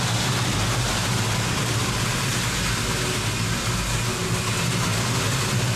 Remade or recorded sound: recorded